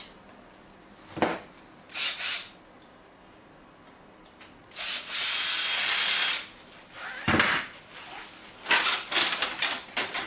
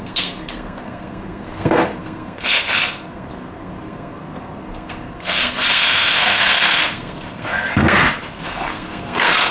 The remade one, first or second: second